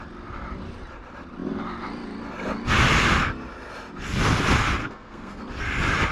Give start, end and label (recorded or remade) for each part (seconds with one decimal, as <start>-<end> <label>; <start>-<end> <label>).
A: 0.0-4.8 recorded; 4.8-5.4 remade; 5.4-6.1 recorded